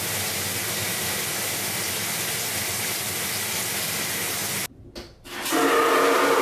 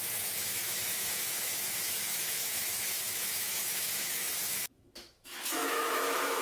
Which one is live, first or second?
first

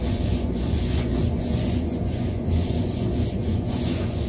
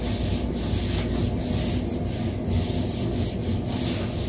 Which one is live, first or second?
second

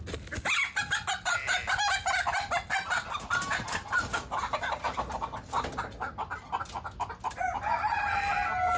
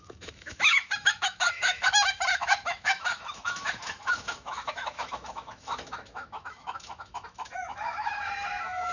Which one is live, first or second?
first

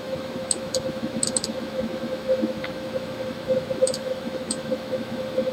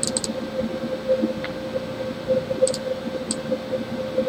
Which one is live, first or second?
second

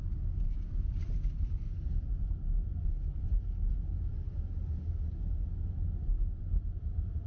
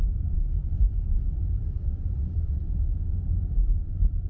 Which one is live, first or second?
first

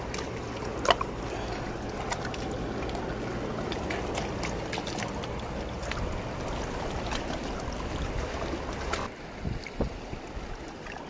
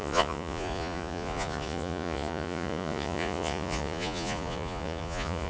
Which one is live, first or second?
first